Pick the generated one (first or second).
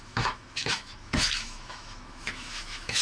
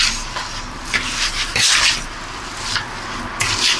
first